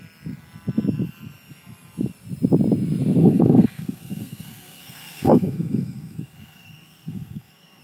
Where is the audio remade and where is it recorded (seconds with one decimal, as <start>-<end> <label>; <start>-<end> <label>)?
0.0-3.2 recorded; 3.2-7.8 remade